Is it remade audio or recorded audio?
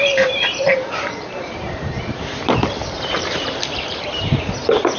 remade